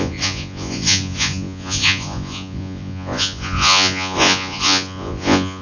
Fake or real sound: fake